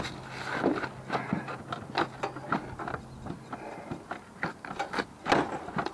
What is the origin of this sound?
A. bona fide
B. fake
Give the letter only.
A